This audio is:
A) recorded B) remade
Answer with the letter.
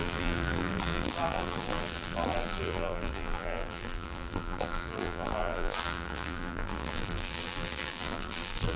B